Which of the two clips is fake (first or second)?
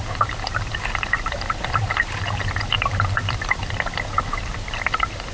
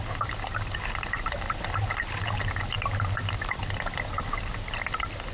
first